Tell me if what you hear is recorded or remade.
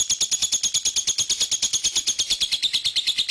recorded